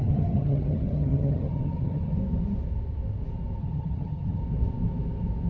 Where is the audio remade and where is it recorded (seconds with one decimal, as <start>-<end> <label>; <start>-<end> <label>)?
0.0-2.2 remade; 2.2-3.6 recorded; 3.6-4.4 remade; 4.4-5.5 recorded